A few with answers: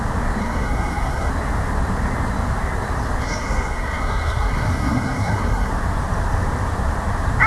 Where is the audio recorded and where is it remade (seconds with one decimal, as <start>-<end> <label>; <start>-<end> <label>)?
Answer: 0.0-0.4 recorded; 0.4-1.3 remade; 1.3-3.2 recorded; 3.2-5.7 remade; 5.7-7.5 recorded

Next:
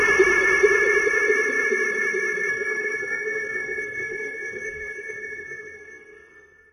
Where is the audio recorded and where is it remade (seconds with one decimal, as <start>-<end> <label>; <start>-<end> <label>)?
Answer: 0.0-2.5 recorded; 2.5-6.7 remade

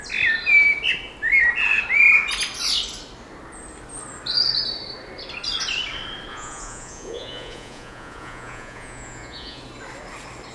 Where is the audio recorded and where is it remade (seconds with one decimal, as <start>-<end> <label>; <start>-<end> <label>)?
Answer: 0.0-6.3 recorded; 6.3-9.6 remade; 9.6-10.5 recorded

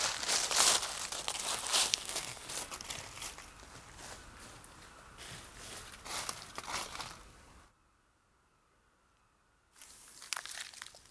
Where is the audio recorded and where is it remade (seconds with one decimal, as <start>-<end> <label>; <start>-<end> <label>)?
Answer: 0.0-1.9 recorded; 1.9-2.5 remade; 2.5-11.1 recorded

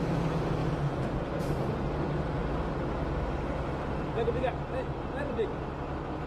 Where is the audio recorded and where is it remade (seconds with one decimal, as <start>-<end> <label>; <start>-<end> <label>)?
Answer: 0.0-0.6 remade; 0.6-1.1 recorded; 1.1-2.4 remade; 2.4-3.4 recorded; 3.4-6.3 remade